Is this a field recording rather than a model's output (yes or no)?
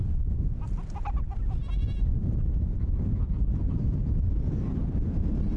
yes